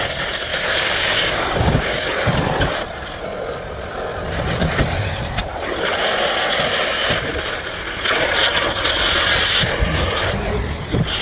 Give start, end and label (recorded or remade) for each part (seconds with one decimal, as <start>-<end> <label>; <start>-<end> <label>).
0.0-0.5 recorded; 0.5-2.0 remade; 2.0-11.2 recorded